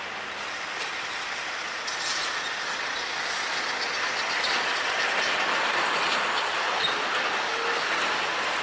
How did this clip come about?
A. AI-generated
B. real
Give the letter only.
B